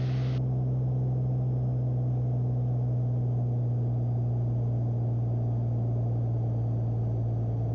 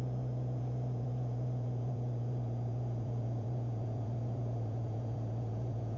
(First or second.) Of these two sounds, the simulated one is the second